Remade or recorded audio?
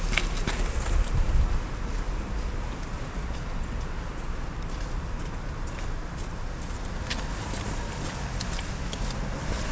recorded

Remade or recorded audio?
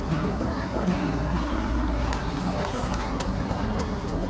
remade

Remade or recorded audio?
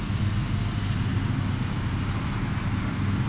recorded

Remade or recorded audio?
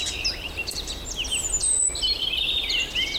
remade